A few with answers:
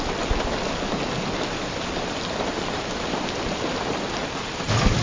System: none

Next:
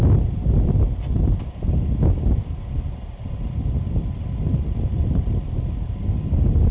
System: none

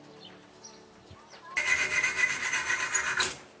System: none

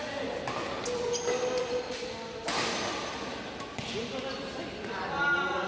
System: none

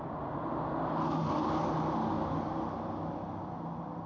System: none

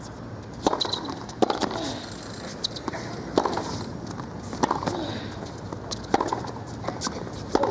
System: none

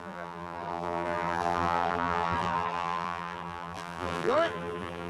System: vocoder, BigVGAN v2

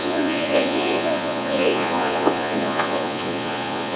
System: vocoder, Vocos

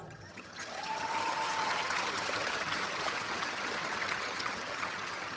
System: vocoder, HiFi-GAN